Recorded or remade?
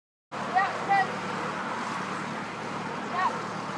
recorded